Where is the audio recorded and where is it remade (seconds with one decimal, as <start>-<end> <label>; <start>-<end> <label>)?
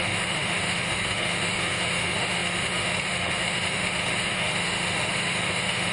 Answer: 0.0-5.9 remade